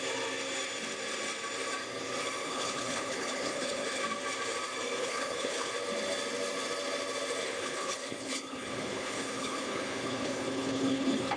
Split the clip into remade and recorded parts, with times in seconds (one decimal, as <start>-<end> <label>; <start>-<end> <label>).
0.0-2.4 recorded; 2.4-4.0 remade; 4.0-5.0 recorded; 5.0-5.7 remade; 5.7-7.4 recorded; 7.4-11.4 remade